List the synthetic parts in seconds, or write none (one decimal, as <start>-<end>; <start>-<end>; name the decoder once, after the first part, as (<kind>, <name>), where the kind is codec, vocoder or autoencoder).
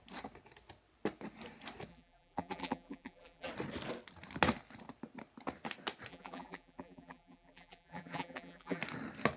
1.9-3.5 (vocoder, BigVGAN v2); 6.1-8.8